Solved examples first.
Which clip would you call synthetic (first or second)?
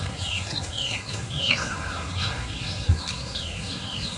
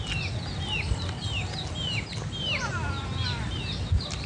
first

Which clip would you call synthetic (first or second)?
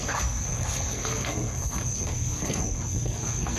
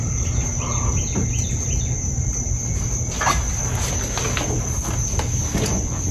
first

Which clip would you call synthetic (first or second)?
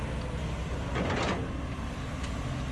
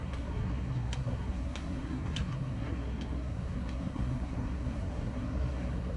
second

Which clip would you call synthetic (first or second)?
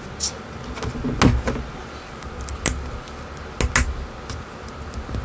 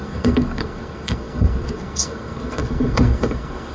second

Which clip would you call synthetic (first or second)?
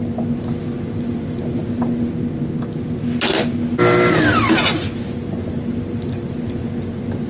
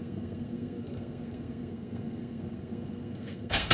second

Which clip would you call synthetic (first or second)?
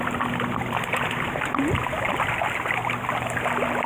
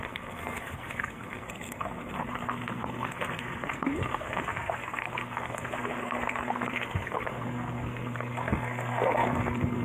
second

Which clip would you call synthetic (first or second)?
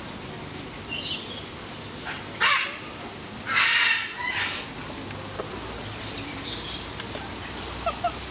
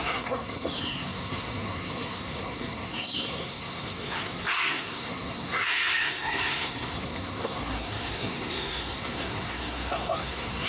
second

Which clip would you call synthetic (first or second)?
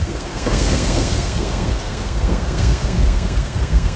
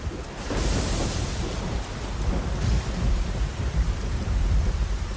first